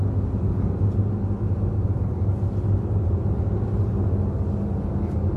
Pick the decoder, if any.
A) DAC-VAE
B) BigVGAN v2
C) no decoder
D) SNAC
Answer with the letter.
C